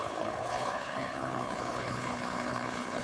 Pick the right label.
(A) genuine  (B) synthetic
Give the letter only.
B